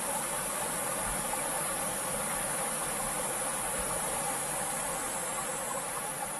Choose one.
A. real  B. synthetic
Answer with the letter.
A